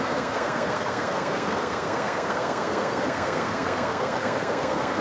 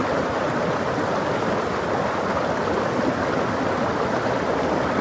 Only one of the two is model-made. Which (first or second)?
first